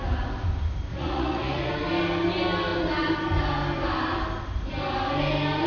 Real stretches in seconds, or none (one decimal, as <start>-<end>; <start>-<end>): 0.0-0.9; 1.7-5.7